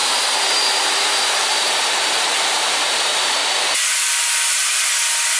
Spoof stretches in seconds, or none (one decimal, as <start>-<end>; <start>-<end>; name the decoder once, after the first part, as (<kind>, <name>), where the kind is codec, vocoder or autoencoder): 0.0-3.4 (vocoder, BigVGAN v2)

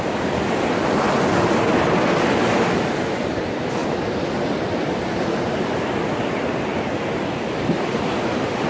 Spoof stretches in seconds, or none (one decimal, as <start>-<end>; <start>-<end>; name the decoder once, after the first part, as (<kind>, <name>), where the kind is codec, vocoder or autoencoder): none